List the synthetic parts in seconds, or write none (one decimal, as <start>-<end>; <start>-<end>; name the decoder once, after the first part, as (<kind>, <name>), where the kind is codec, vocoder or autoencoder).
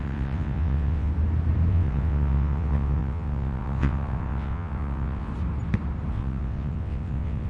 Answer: 0.0-1.1 (vocoder, WaveNeXt); 1.7-5.3; 6.1-7.5